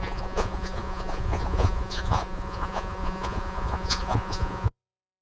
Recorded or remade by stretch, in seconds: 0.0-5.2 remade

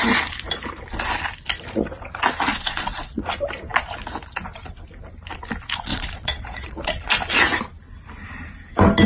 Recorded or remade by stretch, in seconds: 0.0-2.5 recorded; 2.5-3.2 remade; 3.2-5.9 recorded; 5.9-7.1 remade; 7.1-9.1 recorded

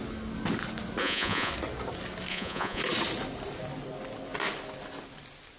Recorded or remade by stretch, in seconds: 0.0-1.0 recorded; 1.0-1.5 remade; 1.5-2.3 recorded; 2.3-2.8 remade; 2.8-5.6 recorded

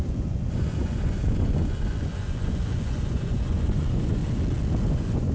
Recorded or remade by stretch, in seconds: 0.0-4.2 remade; 4.2-4.8 recorded; 4.8-5.3 remade

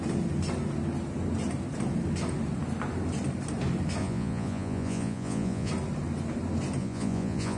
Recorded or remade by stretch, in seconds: 0.0-4.0 recorded; 4.0-5.7 remade; 5.7-6.8 recorded; 6.8-7.6 remade